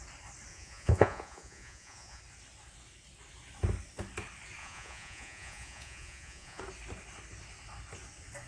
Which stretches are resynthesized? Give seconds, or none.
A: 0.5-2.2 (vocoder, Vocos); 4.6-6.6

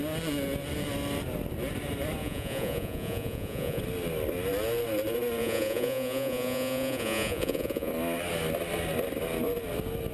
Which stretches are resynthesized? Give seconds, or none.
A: 2.2-3.8 (vocoder, Vocos); 5.4-7.9

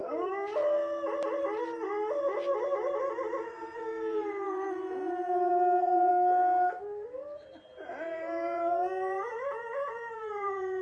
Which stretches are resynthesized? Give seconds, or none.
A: 3.4-6.1 (vocoder, Vocos); 7.9-10.8

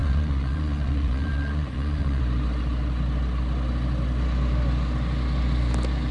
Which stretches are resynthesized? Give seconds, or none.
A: 0.0-2.2 (vocoder, Vocos)

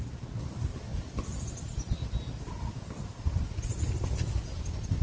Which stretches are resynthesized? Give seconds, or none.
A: none

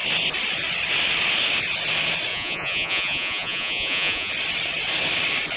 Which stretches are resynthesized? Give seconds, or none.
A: 2.3-4.3 (vocoder, Vocos)

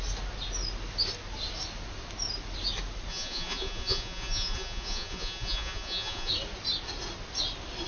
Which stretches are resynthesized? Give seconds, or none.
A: 3.1-6.3 (vocoder, Vocos)

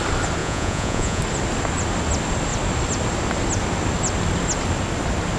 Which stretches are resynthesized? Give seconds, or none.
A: 0.4-1.2 (vocoder, Vocos)